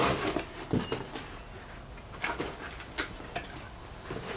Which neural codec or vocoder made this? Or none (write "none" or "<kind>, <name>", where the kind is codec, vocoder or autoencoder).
none